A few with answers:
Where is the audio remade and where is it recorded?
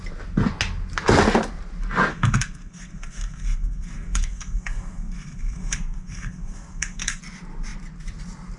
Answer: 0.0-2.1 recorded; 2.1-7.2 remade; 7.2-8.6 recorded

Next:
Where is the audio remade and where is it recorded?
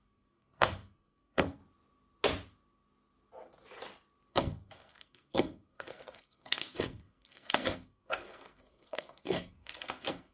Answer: 0.0-1.6 remade; 1.6-4.3 recorded; 4.3-10.3 remade